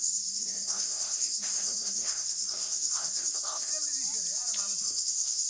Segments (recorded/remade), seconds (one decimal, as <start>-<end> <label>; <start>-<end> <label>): 0.0-3.7 remade; 3.7-4.8 recorded; 4.8-5.5 remade